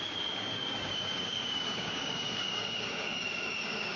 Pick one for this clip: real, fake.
fake